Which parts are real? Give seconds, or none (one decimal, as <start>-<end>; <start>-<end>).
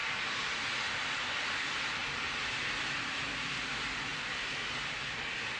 0.0-5.6